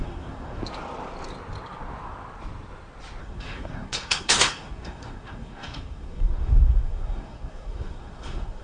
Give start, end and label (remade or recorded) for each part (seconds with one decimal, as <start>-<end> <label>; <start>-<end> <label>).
0.0-0.6 remade; 0.6-3.2 recorded; 3.2-8.6 remade